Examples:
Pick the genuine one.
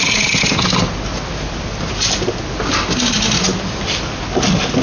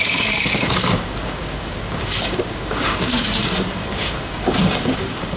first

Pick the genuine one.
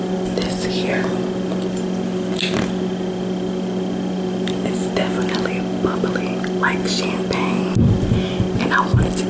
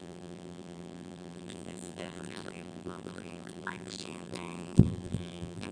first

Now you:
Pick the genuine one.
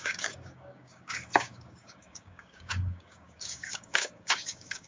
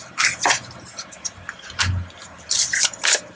second